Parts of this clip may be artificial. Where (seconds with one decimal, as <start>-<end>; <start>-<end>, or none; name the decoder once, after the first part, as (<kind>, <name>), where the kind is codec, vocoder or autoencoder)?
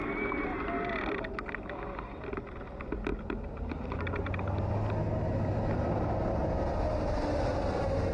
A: none